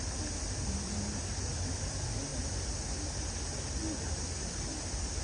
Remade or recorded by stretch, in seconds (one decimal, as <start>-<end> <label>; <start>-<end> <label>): 0.0-5.2 recorded